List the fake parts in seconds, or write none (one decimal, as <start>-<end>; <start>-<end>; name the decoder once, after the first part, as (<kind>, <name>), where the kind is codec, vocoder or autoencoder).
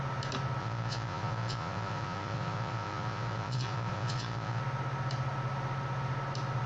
0.6-4.6 (vocoder, Vocos)